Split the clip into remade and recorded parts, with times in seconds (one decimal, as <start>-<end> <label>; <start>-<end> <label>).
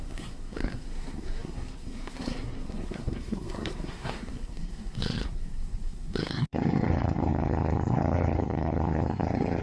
0.0-9.6 remade